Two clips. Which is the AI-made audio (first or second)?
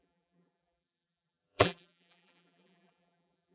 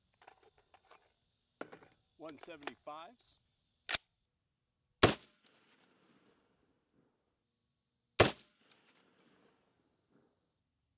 first